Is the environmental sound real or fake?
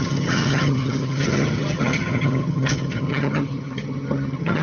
fake